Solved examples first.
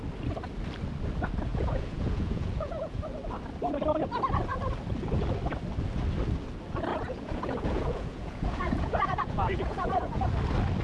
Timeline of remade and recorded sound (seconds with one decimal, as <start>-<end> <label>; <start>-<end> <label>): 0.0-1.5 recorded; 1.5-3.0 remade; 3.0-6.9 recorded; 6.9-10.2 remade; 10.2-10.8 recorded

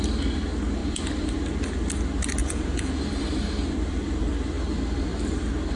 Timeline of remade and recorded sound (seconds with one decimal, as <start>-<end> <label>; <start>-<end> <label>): 0.0-2.4 recorded; 2.4-3.0 remade; 3.0-5.8 recorded

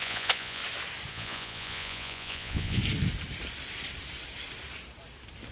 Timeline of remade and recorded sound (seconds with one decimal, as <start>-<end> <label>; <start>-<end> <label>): 0.0-0.6 remade; 0.6-1.1 recorded; 1.1-2.8 remade; 2.8-5.5 recorded